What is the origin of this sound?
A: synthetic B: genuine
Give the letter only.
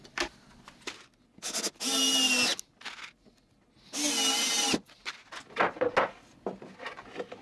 B